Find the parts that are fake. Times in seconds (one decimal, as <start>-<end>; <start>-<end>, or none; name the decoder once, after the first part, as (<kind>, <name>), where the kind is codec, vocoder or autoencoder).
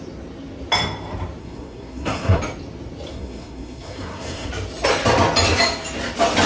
1.4-2.4 (codec, SNAC); 3.1-4.5